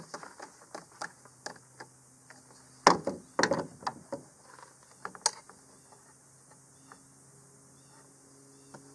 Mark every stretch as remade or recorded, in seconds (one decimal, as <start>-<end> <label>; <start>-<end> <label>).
0.0-8.9 recorded